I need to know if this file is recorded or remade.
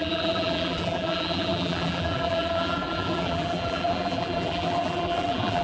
remade